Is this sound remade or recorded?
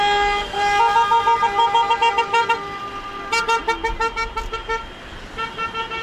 recorded